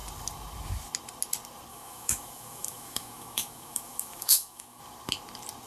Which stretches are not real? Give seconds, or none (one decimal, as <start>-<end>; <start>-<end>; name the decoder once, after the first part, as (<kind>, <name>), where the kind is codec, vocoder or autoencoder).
1.7-4.8 (autoencoder, DAC-VAE)